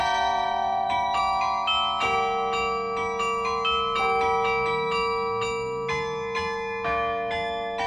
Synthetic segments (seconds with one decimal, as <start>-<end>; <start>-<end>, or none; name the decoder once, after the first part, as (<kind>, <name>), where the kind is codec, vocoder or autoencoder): 0.0-1.2 (vocoder, BigVGAN v2)